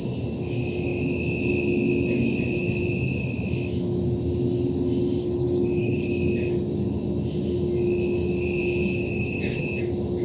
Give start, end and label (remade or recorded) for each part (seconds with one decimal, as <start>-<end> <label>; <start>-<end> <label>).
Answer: 0.0-5.2 recorded; 5.2-6.1 remade; 6.1-9.0 recorded; 9.0-9.6 remade; 9.6-10.2 recorded